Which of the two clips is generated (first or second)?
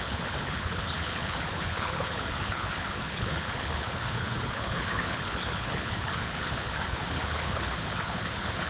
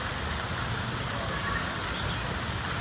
first